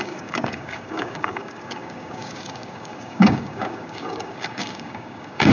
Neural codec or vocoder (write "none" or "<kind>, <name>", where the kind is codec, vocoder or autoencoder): codec, DAC